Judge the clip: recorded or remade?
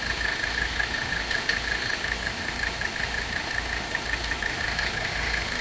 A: remade